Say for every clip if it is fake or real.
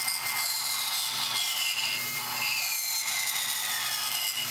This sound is real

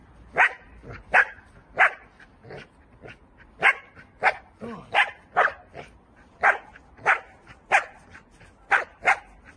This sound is real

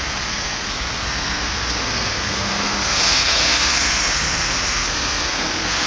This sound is fake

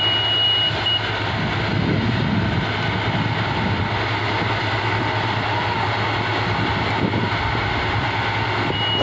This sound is real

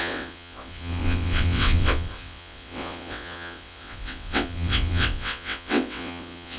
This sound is fake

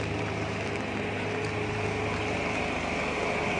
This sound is real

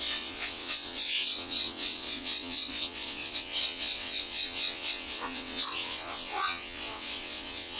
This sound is fake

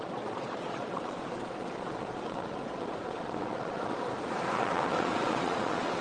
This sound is fake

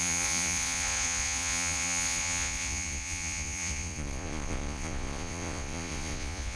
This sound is fake